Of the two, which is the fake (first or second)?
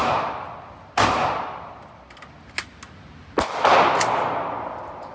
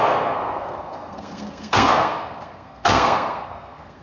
second